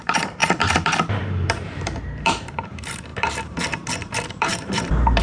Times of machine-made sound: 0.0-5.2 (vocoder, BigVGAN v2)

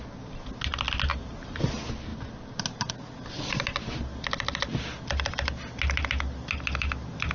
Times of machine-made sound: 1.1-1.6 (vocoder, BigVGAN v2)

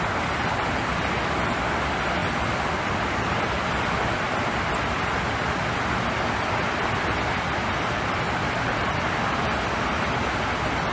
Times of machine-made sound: 8.4-8.9 (vocoder, BigVGAN v2)